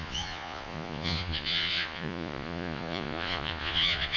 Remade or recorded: remade